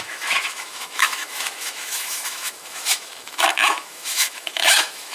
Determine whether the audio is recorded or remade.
remade